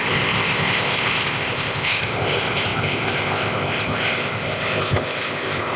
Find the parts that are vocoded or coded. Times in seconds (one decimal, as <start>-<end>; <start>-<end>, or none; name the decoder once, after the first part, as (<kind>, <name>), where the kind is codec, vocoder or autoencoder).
0.0-5.8 (codec, ZipCodec)